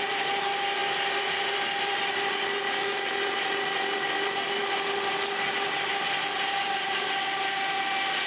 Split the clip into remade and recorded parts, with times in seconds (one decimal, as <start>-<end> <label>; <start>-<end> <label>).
0.0-8.3 recorded